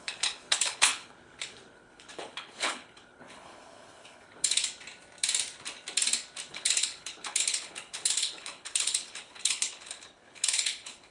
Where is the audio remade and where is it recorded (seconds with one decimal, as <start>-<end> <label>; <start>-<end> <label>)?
0.0-4.6 remade; 4.6-6.5 recorded; 6.5-11.1 remade